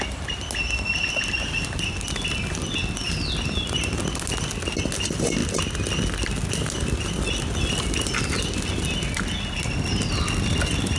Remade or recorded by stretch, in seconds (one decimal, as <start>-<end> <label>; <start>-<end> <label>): 0.0-11.0 recorded